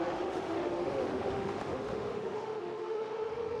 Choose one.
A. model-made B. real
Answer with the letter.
A